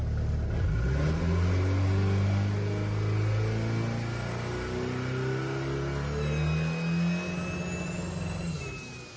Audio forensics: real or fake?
real